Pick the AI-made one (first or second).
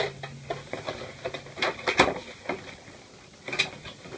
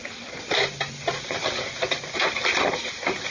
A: second